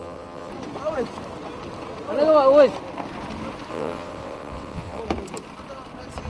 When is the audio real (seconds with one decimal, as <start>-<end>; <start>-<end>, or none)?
0.5-3.7; 5.0-6.3